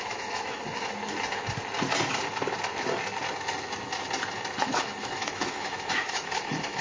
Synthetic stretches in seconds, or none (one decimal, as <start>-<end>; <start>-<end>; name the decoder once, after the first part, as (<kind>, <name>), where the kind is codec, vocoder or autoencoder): 0.0-1.0 (autoencoder, DAC-VAE); 4.6-6.8